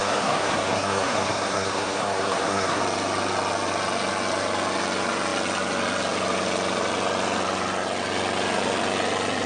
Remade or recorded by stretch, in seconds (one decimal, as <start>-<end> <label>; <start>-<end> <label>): 0.0-2.8 remade; 2.8-9.5 recorded